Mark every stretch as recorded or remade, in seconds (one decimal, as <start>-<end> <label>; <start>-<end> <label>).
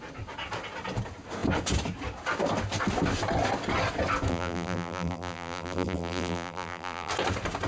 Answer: 0.0-4.3 recorded; 4.3-7.1 remade; 7.1-7.7 recorded